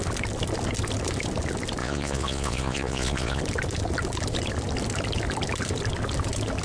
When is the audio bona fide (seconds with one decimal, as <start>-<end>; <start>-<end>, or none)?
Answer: 0.0-1.8; 3.4-6.6